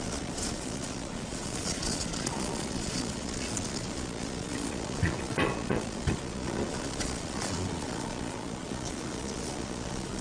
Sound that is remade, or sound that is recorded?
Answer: remade